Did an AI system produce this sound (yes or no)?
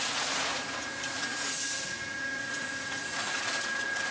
yes